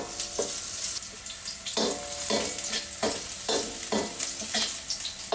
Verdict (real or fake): real